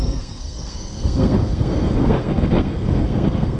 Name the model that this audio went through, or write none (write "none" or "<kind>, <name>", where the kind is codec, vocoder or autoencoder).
codec, SNAC